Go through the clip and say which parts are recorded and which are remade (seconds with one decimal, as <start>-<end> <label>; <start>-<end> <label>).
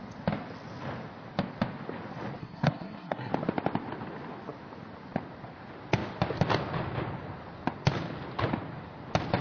0.0-2.4 recorded; 2.4-3.3 remade; 3.3-9.4 recorded